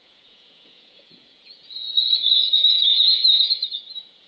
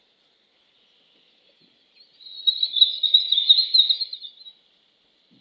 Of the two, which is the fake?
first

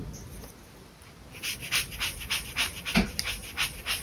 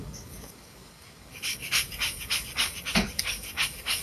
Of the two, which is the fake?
second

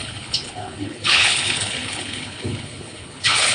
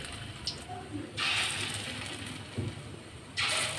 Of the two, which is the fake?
first